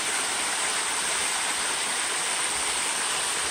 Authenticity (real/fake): real